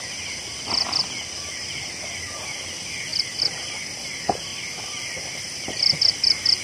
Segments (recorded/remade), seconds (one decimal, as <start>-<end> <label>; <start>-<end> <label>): 0.0-1.0 recorded; 1.0-2.1 remade; 2.1-3.1 recorded; 3.1-4.0 remade; 4.0-4.5 recorded; 4.5-6.0 remade; 6.0-6.6 recorded

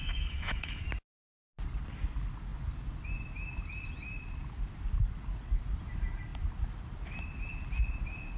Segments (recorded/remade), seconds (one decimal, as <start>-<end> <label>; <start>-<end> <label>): 0.0-0.8 remade; 0.8-8.4 recorded

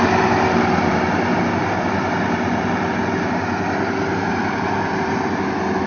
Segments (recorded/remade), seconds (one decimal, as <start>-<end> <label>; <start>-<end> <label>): 0.0-5.9 recorded

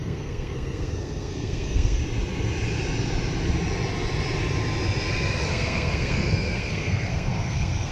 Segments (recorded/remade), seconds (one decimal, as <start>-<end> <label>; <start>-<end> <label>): 0.0-2.0 remade; 2.0-5.5 recorded; 5.5-7.9 remade

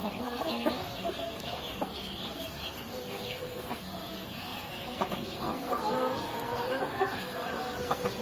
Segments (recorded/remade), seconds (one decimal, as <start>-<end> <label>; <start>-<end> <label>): 0.0-8.2 remade

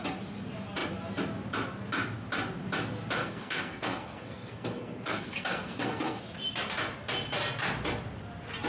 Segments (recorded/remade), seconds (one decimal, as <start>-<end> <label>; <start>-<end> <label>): 0.0-3.2 recorded; 3.2-6.2 remade; 6.2-8.7 recorded